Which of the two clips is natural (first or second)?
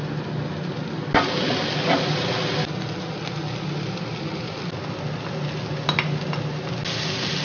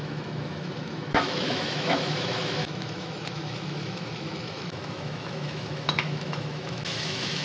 first